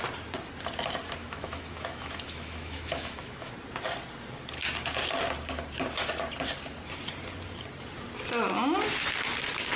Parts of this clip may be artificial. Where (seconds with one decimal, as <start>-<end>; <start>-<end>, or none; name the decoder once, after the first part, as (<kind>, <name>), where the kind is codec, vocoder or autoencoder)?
1.2-3.5 (autoencoder, DAC-VAE)